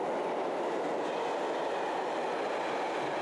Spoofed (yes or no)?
no